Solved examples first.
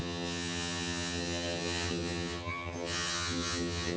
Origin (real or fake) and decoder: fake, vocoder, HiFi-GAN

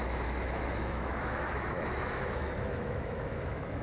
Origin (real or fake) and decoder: fake, autoencoder, DAC-VAE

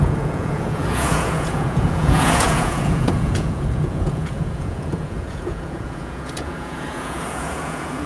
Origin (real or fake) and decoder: fake, vocoder, Vocos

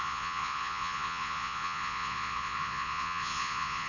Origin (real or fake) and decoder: fake, vocoder, Vocos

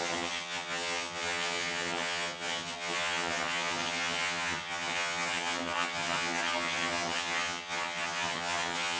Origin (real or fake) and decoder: fake, vocoder, HiFi-GAN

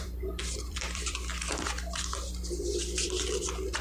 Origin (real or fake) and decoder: fake, vocoder, BigVGAN v2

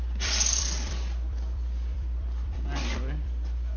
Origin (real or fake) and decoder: fake, vocoder, BigVGAN v2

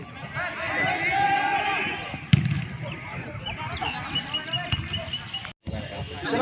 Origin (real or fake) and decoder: real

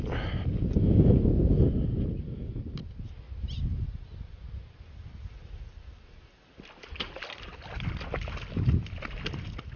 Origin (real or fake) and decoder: real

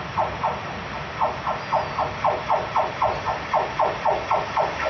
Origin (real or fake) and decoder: real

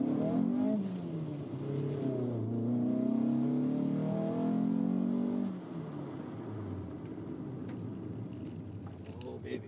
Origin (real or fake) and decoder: real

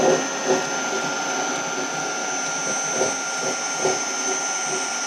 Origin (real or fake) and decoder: real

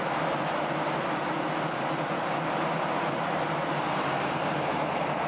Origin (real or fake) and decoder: real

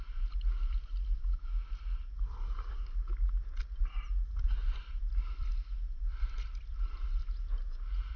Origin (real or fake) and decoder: real